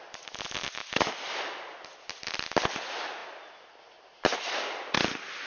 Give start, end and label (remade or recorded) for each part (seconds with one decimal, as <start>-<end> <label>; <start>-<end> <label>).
0.0-5.5 recorded

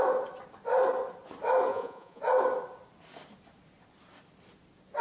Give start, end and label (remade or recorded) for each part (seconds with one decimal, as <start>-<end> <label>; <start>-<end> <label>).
0.0-1.7 recorded; 1.7-2.2 remade; 2.2-5.0 recorded

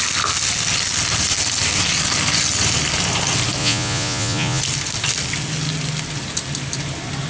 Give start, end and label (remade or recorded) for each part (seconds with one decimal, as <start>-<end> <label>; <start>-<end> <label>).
0.0-3.6 recorded; 3.6-4.6 remade; 4.6-7.3 recorded

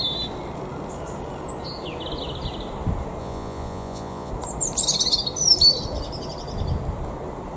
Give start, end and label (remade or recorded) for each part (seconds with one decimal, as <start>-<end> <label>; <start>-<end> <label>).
0.0-3.2 recorded; 3.2-4.3 remade; 4.3-7.6 recorded

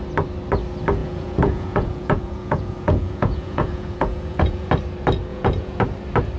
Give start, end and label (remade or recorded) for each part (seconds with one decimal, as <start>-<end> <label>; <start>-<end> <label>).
0.0-1.0 recorded; 1.0-4.7 remade; 4.7-5.3 recorded; 5.3-5.8 remade; 5.8-6.4 recorded

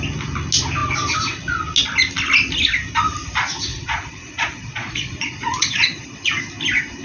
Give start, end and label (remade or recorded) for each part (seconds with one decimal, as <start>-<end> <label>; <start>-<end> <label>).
0.0-3.7 recorded; 3.7-6.4 remade; 6.4-7.0 recorded

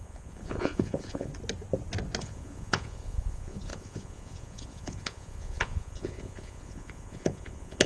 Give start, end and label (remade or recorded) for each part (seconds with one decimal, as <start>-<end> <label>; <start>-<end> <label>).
0.0-1.3 remade; 1.3-2.2 recorded; 2.2-7.9 remade